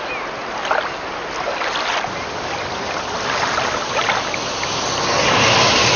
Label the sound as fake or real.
real